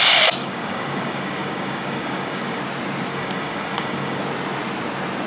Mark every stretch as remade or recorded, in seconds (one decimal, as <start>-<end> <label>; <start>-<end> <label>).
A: 0.0-0.4 recorded; 0.4-2.6 remade; 2.6-3.1 recorded; 3.1-4.2 remade; 4.2-5.3 recorded